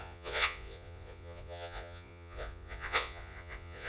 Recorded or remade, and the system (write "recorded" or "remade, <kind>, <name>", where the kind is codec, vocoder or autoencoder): remade, vocoder, Vocos